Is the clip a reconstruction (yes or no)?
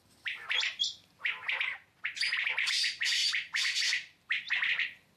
yes